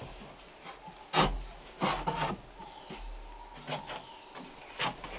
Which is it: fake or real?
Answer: real